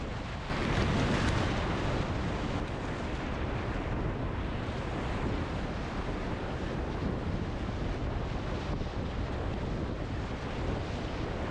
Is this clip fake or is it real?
real